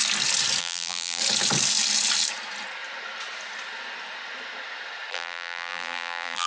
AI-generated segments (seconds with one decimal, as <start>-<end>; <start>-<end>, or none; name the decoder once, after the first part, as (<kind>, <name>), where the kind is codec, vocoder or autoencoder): 0.6-1.2 (vocoder, BigVGAN v2); 5.1-6.5